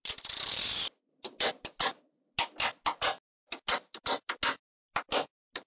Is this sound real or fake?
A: real